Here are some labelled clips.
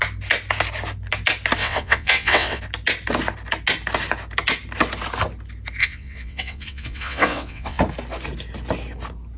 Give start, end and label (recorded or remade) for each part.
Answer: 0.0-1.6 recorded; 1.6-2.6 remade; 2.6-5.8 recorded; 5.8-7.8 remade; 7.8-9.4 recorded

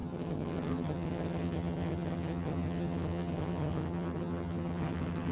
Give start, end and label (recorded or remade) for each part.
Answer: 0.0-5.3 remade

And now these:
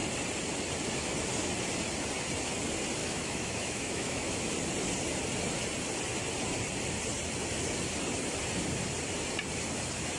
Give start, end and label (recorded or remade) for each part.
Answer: 0.0-3.0 recorded; 3.0-4.5 remade; 4.5-10.2 recorded

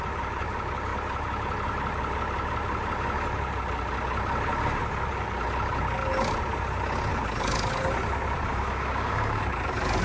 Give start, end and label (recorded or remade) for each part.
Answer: 0.0-8.5 recorded; 8.5-9.4 remade; 9.4-10.0 recorded

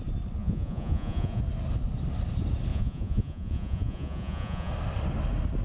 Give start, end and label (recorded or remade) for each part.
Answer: 0.0-0.4 recorded; 0.4-1.4 remade; 1.4-2.7 recorded; 2.7-4.7 remade; 4.7-5.6 recorded

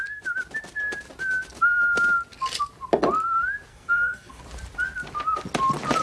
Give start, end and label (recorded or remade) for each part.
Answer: 0.0-3.7 recorded; 3.7-4.4 remade; 4.4-6.0 recorded

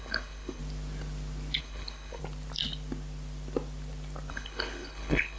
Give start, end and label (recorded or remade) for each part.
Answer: 0.0-0.6 remade; 0.6-1.6 recorded; 1.6-2.2 remade; 2.2-4.3 recorded; 4.3-5.4 remade

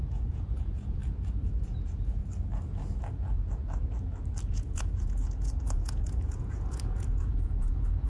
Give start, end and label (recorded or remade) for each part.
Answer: 0.0-1.0 remade; 1.0-1.6 recorded; 1.6-2.2 remade; 2.2-4.4 recorded; 4.4-8.1 remade